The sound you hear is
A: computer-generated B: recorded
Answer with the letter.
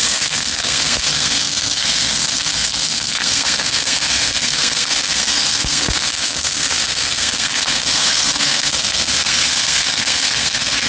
A